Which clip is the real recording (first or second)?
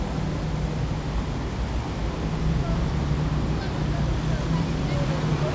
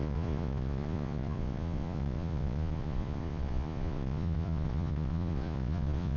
first